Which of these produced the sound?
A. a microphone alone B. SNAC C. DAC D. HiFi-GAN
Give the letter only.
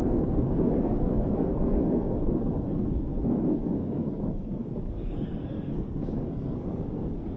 B